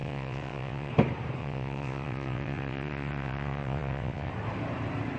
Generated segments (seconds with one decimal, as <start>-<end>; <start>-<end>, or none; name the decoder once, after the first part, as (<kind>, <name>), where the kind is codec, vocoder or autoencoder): 0.0-0.9 (vocoder, WaveNeXt); 1.4-4.3

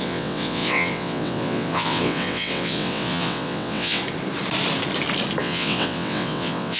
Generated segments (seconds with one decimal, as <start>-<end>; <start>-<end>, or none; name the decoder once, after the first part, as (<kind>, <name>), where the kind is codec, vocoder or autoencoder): 0.0-4.0 (vocoder, WaveNeXt); 5.4-6.8

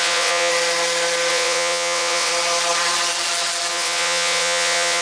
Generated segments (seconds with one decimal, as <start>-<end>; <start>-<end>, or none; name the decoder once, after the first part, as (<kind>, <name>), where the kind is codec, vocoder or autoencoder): 0.0-0.5 (vocoder, WaveNeXt); 1.3-2.3; 3.7-5.0